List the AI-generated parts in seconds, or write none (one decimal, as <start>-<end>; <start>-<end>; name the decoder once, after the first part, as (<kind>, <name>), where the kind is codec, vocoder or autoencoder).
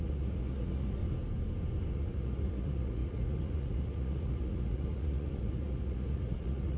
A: 0.0-1.0 (vocoder, Vocos); 1.9-6.8